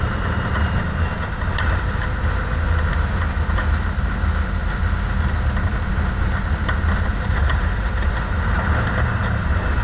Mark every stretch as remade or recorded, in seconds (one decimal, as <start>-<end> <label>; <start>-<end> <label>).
0.0-2.0 remade; 2.0-7.1 recorded; 7.1-9.8 remade